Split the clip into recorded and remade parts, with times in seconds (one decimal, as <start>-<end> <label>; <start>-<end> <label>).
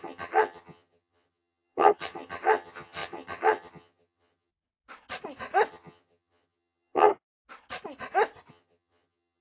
0.0-4.5 remade; 4.5-5.7 recorded; 5.7-7.1 remade; 7.1-8.5 recorded; 8.5-9.4 remade